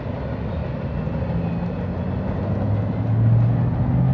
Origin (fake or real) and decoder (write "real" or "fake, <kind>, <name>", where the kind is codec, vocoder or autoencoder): real